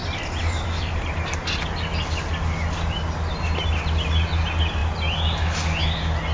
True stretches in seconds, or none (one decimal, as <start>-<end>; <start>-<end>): 0.0-6.3